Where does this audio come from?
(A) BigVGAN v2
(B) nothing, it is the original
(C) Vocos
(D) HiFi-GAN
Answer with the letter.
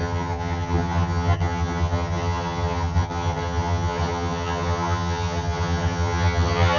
D